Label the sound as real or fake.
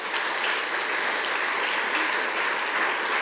real